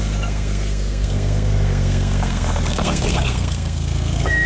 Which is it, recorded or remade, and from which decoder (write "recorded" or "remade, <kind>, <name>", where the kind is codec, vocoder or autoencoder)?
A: remade, codec, SNAC